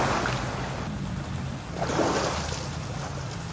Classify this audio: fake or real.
real